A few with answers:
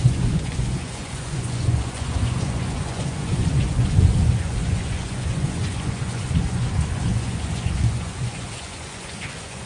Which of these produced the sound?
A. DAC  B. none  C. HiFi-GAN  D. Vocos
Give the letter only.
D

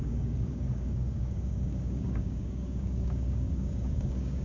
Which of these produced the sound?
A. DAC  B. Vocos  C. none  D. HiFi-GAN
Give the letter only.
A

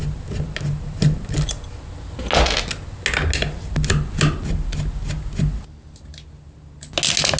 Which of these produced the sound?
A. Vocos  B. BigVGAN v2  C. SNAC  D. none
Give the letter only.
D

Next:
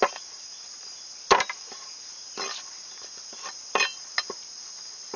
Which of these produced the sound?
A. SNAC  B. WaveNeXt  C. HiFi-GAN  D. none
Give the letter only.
D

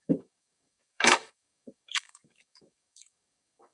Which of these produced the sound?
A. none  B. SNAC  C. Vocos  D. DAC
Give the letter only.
D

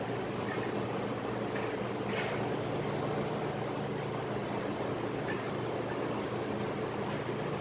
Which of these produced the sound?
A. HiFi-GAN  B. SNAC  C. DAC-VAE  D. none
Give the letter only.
D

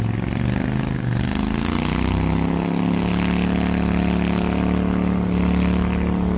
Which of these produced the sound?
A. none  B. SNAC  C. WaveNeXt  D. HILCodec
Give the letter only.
A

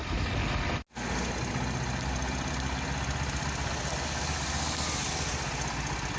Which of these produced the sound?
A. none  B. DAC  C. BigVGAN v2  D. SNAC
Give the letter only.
A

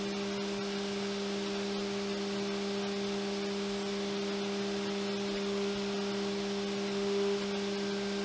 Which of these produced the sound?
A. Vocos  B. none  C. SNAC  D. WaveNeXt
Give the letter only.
B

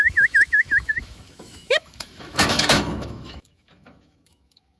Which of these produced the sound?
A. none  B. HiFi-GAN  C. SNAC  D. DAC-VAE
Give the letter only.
D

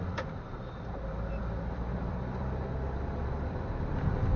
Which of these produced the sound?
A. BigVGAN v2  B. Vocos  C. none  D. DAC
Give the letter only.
A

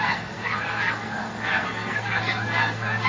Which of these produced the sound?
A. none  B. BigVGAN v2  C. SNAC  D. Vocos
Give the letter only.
C